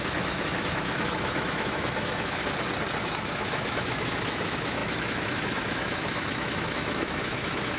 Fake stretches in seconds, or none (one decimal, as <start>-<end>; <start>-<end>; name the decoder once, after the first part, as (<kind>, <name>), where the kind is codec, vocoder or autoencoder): 0.0-2.4 (autoencoder, DAC-VAE); 3.0-7.8